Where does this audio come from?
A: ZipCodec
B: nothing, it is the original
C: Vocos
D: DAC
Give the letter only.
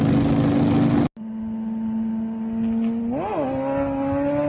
B